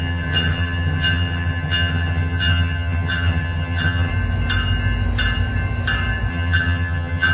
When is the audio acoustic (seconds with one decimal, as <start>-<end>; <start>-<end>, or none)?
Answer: 4.1-6.3